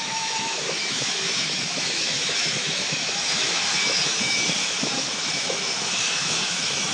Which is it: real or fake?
fake